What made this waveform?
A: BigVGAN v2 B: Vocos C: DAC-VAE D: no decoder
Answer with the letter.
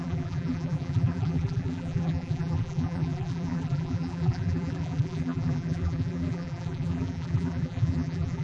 A